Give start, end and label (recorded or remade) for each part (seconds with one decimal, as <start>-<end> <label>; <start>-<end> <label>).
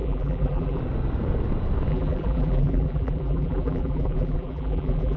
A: 0.0-0.8 remade; 0.8-1.9 recorded; 1.9-5.2 remade